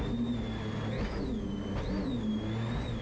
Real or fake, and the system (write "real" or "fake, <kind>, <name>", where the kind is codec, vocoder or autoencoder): real